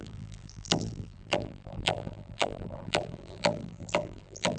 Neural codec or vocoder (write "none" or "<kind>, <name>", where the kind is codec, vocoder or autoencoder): vocoder, BigVGAN v2